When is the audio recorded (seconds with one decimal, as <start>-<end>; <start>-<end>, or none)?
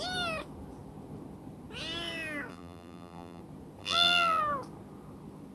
0.0-2.5; 3.4-3.8; 4.4-5.5